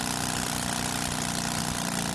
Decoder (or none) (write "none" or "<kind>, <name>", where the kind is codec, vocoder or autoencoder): none